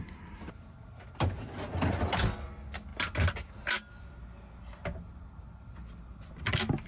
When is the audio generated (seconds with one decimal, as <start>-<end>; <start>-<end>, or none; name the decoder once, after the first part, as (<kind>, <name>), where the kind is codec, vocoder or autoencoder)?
none